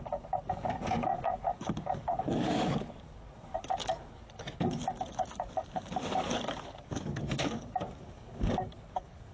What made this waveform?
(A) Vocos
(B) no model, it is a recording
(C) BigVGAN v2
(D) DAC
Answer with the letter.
D